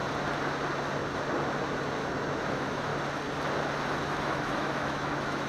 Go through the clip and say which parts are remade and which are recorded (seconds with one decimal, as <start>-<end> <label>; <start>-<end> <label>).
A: 0.0-2.5 recorded; 2.5-2.9 remade; 2.9-4.1 recorded; 4.1-5.5 remade